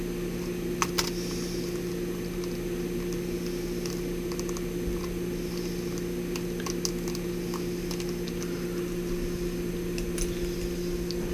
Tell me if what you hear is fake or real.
real